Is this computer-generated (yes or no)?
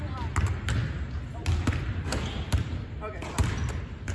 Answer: no